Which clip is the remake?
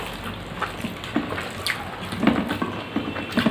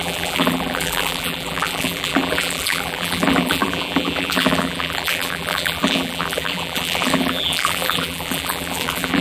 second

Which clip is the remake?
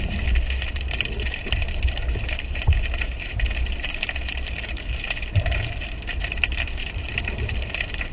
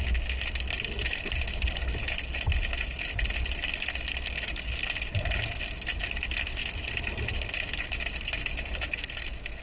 first